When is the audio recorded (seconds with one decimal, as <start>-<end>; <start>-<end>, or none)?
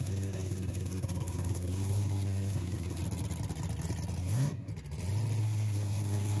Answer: 3.0-4.2; 4.7-5.4